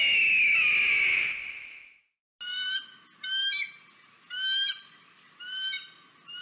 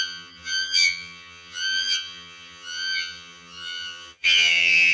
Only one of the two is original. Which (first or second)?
first